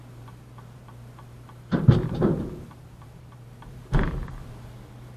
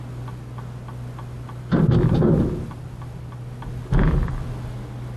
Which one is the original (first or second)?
second